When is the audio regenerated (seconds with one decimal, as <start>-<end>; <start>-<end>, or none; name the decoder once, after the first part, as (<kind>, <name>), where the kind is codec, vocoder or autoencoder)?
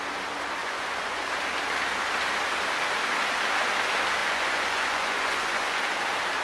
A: 0.6-1.3 (vocoder, Vocos); 4.2-5.8